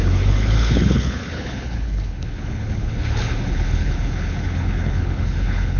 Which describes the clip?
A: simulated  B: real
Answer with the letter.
A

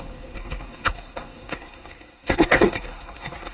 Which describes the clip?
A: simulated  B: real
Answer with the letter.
A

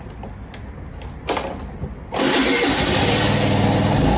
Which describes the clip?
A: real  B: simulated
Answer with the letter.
A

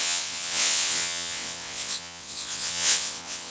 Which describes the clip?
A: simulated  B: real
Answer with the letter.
A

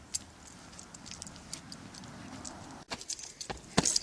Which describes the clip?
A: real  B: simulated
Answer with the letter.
A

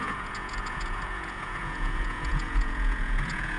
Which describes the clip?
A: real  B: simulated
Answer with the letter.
B